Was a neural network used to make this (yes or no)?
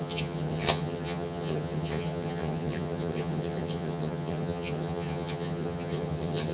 yes